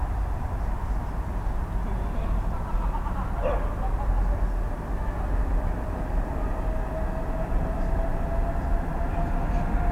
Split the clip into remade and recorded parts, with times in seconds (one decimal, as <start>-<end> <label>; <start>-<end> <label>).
0.0-9.9 recorded